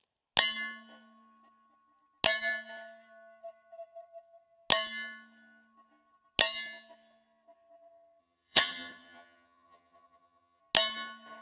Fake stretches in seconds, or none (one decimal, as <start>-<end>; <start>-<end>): 8.2-10.6